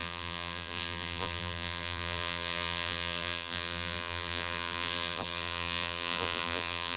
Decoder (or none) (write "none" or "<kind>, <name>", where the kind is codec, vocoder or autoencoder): vocoder, BigVGAN v2